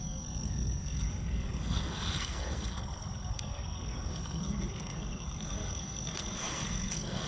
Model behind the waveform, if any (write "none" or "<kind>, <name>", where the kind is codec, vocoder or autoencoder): codec, SNAC